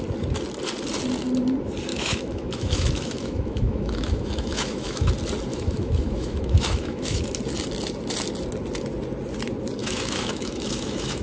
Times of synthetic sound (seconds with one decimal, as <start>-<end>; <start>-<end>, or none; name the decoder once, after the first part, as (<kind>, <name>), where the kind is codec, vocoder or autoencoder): 1.9-5.1 (autoencoder, DAC-VAE); 5.5-7.2; 9.8-11.2